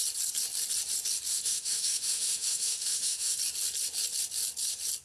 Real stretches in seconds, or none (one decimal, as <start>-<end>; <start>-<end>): 0.0-1.3; 3.4-5.0